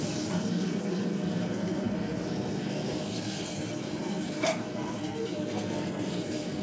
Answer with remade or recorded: remade